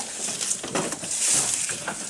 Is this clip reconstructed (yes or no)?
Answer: no